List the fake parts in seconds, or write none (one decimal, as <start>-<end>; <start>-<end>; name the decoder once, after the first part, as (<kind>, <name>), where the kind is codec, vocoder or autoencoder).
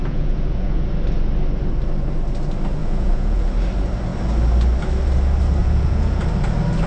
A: 0.0-0.9 (vocoder, Vocos); 2.8-3.5; 5.6-6.2